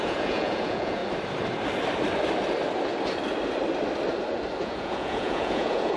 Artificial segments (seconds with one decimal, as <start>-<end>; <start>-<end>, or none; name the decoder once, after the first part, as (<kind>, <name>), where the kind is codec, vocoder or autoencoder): 0.0-1.0 (vocoder, Vocos); 4.6-6.0